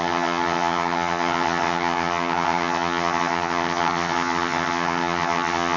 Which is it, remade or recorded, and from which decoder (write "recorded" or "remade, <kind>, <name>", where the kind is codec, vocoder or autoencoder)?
remade, vocoder, HiFi-GAN